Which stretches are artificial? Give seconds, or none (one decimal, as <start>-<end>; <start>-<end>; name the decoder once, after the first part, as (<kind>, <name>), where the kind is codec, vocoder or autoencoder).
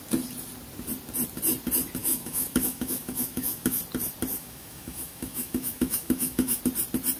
2.0-3.8 (autoencoder, DAC-VAE); 4.3-6.6